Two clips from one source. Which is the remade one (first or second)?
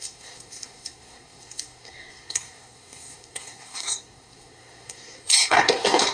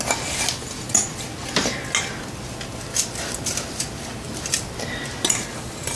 first